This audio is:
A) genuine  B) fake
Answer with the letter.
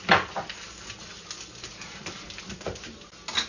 A